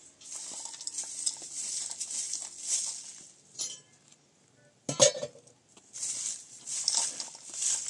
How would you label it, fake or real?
real